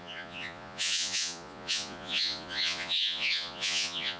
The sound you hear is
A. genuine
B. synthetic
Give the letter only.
B